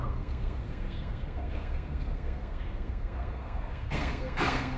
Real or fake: fake